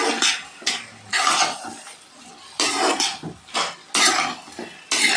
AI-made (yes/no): no